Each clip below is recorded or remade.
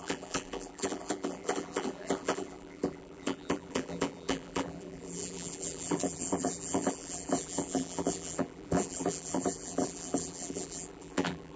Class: remade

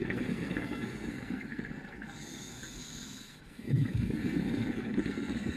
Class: remade